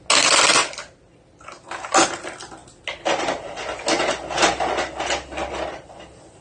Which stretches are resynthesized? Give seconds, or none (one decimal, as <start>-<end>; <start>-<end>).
none